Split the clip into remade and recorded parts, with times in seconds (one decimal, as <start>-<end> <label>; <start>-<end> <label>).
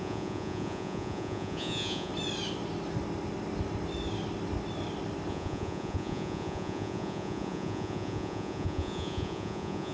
0.0-2.1 remade; 2.1-5.3 recorded; 5.3-9.9 remade